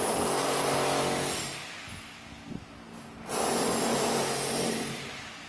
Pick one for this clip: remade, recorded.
recorded